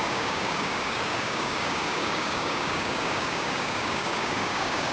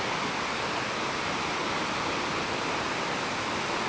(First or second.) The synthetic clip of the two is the first